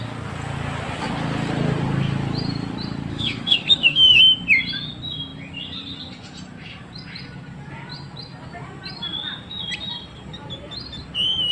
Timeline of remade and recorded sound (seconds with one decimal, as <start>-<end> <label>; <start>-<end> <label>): 0.0-3.1 recorded; 3.1-4.2 remade; 4.2-11.5 recorded